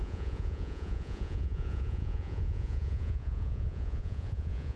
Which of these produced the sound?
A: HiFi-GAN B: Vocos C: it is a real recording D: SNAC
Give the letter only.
B